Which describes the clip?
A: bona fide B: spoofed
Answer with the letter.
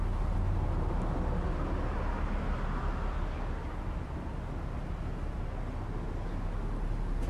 A